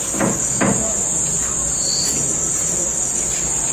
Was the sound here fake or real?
real